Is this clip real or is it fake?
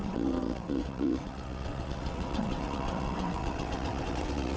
fake